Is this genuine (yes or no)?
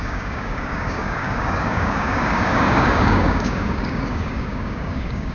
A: no